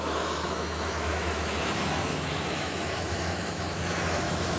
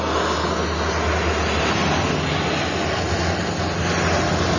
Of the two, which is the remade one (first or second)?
first